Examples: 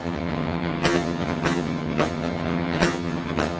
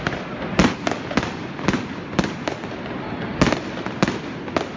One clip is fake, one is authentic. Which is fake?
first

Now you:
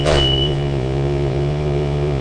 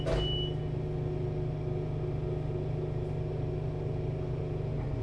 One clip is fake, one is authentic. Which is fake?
first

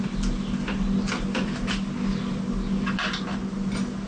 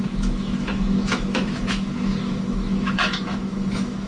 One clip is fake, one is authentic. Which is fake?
second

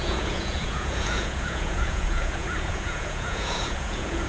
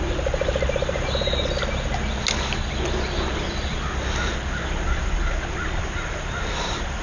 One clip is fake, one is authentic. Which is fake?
first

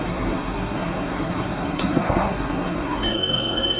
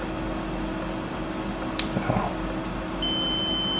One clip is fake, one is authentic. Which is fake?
first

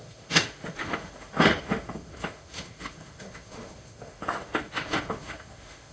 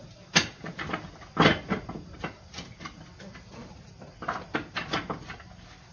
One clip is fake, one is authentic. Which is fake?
first